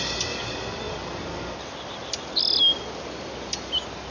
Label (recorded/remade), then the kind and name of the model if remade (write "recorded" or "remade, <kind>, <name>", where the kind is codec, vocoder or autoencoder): recorded